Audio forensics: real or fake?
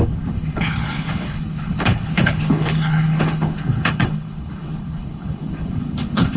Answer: fake